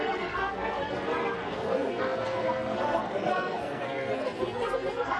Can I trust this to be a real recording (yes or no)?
no